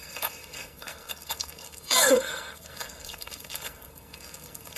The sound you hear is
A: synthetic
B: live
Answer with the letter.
A